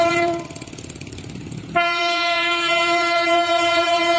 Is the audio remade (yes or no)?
yes